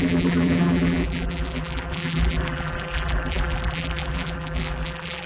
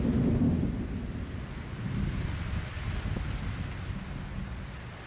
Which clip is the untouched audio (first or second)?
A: second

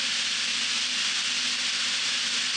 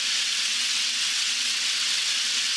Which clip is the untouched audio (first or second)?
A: first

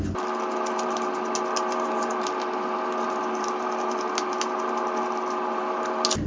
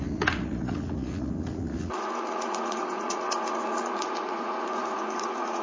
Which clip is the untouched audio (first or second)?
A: first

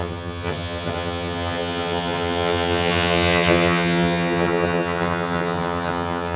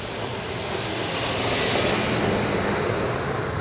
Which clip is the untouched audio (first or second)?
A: second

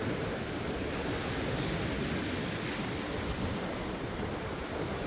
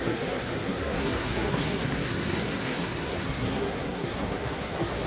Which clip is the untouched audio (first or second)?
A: first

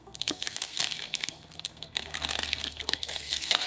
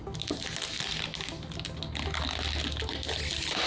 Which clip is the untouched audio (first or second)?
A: second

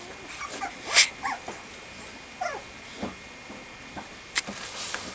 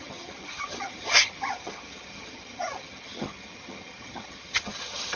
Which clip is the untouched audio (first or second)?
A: first